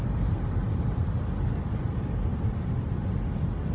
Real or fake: real